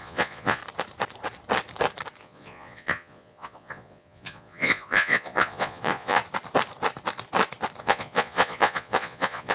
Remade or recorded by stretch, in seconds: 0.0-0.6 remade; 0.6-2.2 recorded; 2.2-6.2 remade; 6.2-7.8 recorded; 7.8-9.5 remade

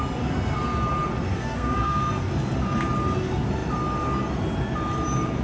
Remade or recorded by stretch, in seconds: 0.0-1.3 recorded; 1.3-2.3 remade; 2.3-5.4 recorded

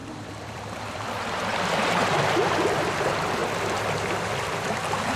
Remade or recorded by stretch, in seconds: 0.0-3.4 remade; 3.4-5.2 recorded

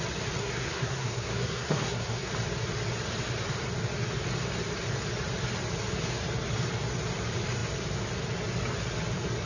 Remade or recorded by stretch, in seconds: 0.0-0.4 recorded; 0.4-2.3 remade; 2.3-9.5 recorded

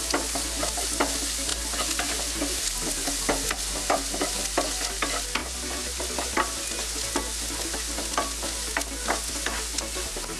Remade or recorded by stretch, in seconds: 0.0-10.4 recorded

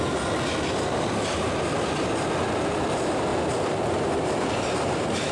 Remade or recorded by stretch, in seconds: 0.0-3.3 recorded; 3.3-5.3 remade

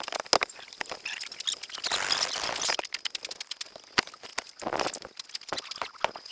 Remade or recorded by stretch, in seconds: 0.0-6.3 recorded